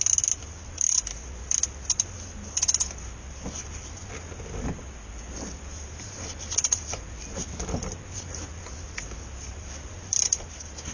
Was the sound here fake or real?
real